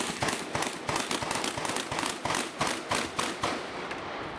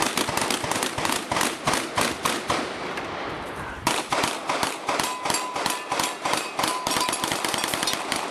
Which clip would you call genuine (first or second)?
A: first